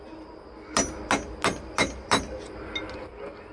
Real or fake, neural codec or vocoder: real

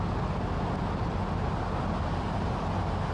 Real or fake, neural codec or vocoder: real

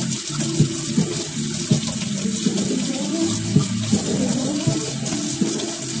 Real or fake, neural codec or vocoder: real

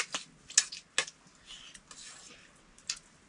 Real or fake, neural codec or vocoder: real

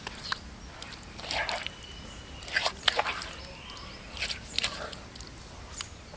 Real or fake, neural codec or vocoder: real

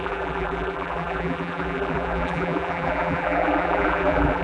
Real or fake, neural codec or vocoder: fake, vocoder, BigVGAN v2